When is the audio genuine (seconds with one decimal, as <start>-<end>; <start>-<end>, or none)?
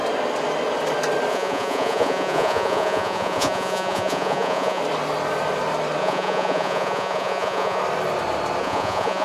0.0-1.3; 4.8-6.0; 7.8-8.6